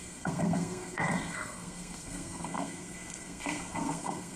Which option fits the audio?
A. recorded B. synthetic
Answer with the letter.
B